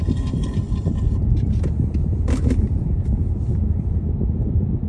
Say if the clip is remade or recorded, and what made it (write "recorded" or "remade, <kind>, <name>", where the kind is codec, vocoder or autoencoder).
recorded